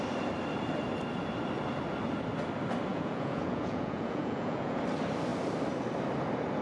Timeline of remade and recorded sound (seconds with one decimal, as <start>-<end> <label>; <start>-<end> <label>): 0.0-2.9 recorded; 2.9-4.8 remade; 4.8-6.6 recorded